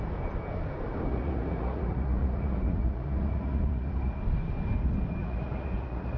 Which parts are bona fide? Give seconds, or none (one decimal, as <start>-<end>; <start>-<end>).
0.0-1.1; 4.2-5.2